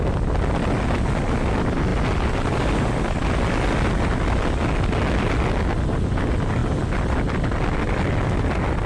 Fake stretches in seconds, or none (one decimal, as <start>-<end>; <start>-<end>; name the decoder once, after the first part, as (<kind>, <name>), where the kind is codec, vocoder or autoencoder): none

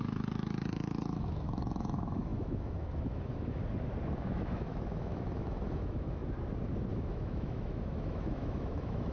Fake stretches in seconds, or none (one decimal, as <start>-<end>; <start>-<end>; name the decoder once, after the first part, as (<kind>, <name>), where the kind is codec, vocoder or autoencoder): 0.0-3.6 (autoencoder, DAC-VAE); 4.2-6.2; 6.9-9.1

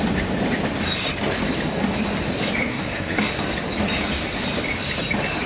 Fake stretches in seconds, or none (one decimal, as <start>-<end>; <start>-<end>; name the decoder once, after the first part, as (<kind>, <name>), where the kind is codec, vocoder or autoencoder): 2.7-3.3 (codec, SNAC)

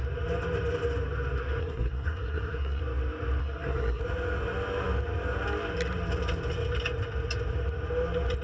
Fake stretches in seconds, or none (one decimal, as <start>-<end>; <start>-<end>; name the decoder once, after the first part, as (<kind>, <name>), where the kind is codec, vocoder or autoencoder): 1.6-2.8 (codec, SNAC); 3.4-4.0

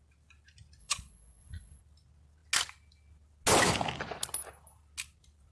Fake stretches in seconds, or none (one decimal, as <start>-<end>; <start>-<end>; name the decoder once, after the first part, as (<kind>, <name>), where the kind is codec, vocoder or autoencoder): 0.8-1.8 (vocoder, Vocos)

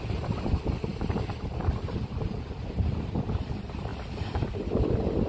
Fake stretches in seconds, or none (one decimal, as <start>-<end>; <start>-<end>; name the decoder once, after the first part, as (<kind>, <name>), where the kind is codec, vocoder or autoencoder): 0.9-3.5 (vocoder, BigVGAN v2); 3.9-4.5